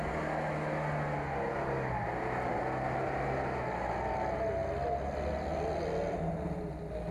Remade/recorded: recorded